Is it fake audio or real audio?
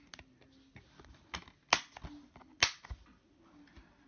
real